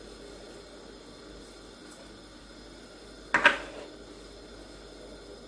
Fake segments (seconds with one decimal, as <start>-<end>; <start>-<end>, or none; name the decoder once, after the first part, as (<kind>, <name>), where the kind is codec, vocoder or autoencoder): none